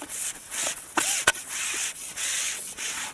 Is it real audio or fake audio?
fake